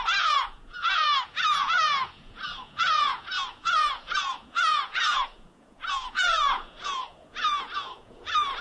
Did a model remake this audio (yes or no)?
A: yes